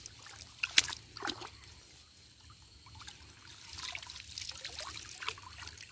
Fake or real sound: real